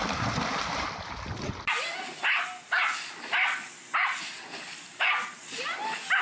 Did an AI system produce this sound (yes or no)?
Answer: no